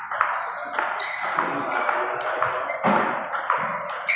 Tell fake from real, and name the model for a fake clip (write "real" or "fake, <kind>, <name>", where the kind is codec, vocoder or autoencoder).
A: real